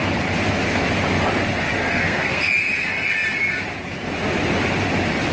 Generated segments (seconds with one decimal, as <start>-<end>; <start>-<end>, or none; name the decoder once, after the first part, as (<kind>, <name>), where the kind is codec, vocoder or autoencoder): 1.9-2.5 (codec, SNAC)